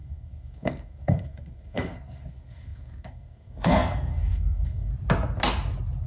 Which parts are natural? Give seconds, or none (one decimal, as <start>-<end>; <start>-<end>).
4.9-6.1